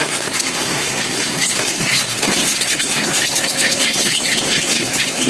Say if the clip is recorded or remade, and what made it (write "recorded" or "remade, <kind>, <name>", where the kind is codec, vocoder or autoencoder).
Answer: remade, codec, SNAC